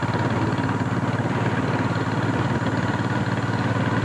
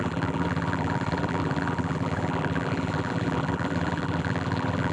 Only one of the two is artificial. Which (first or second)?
second